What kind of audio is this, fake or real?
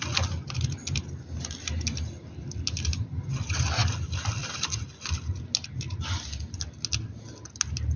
real